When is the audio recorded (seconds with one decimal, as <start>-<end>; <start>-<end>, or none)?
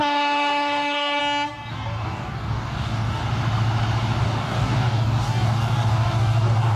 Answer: 1.2-1.7; 3.2-4.2